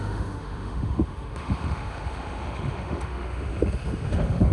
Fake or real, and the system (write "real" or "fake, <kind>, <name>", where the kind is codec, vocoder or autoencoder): fake, autoencoder, DAC-VAE